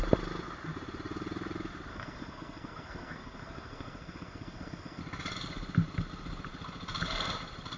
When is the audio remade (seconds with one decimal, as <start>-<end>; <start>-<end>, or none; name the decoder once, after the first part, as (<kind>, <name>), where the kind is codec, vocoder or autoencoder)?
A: 1.9-5.0 (codec, SNAC)